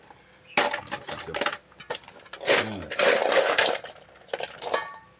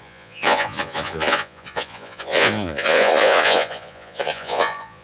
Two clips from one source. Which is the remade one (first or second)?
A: second